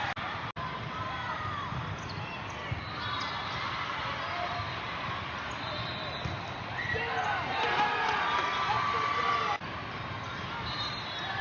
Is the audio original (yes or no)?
yes